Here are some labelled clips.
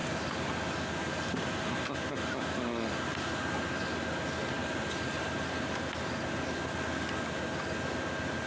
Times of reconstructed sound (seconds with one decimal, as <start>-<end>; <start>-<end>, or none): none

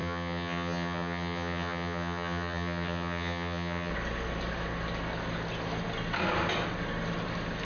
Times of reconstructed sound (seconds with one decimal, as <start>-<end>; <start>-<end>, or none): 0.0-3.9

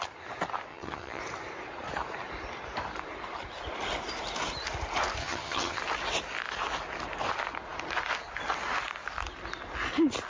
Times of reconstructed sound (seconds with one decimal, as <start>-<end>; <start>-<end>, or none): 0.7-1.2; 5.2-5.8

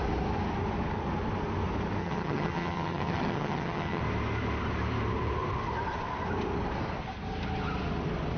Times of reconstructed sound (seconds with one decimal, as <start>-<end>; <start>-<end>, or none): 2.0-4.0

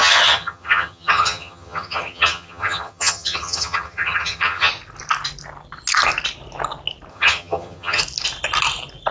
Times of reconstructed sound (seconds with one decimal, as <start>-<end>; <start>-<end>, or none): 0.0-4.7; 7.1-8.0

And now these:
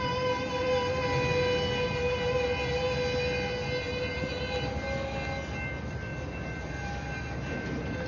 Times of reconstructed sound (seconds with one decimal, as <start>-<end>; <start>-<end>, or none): none

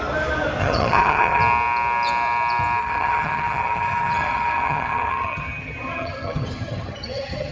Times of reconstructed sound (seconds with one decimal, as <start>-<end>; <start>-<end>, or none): 0.6-1.4; 2.8-7.5

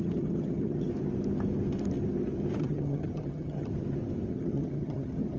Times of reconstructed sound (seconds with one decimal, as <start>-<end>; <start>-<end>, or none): 0.0-0.9; 2.6-3.7; 4.3-5.4